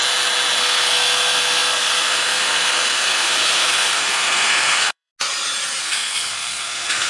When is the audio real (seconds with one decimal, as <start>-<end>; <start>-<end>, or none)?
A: 0.0-0.6; 5.1-5.8